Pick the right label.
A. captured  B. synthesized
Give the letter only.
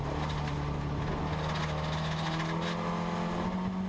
A